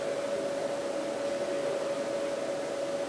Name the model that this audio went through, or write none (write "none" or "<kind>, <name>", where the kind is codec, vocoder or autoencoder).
none